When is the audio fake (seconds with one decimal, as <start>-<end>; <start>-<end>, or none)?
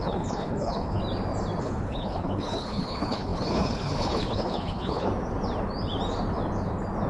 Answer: 0.0-1.0; 1.6-5.1